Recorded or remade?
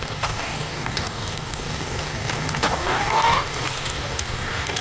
remade